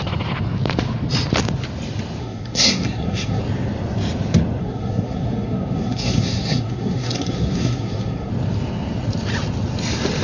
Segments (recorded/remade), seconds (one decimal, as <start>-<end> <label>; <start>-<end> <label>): 0.0-2.2 recorded; 2.2-3.4 remade; 3.4-4.6 recorded; 4.6-8.3 remade; 8.3-10.2 recorded